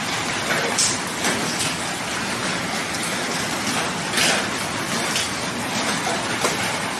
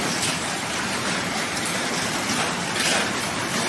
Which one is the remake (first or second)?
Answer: second